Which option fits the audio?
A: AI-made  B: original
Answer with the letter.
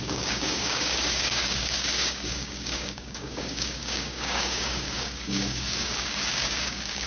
A